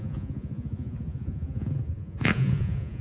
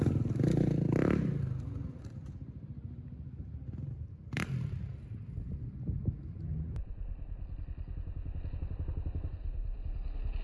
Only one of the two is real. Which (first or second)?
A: second